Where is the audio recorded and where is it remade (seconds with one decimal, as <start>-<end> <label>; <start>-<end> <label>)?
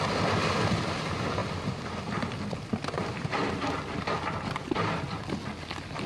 0.0-6.1 recorded